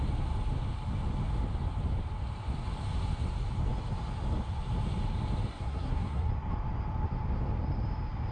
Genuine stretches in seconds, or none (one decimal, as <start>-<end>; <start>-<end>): 0.0-5.5; 6.3-8.3